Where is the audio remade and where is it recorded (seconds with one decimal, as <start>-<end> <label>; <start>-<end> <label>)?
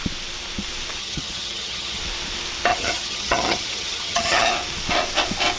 0.0-1.0 recorded; 1.0-2.0 remade; 2.0-2.7 recorded; 2.7-4.5 remade; 4.5-5.6 recorded